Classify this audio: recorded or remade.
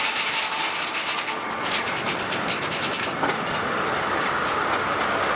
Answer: remade